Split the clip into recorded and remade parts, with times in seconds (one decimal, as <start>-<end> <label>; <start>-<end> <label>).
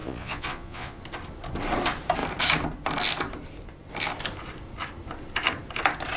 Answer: 0.0-1.0 remade; 1.0-6.2 recorded